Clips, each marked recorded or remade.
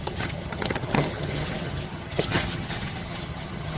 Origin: remade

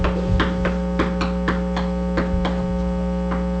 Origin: recorded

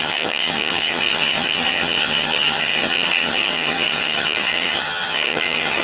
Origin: remade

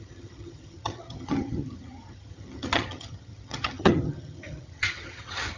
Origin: remade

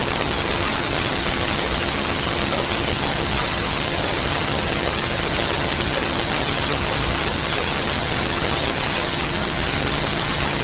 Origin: remade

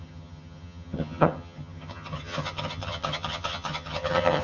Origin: remade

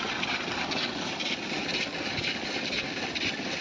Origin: recorded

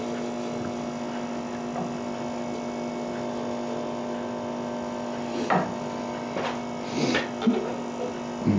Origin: recorded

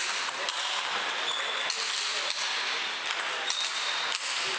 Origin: recorded